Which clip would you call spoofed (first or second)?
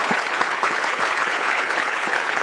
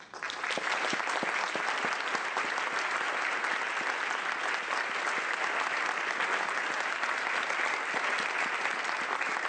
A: first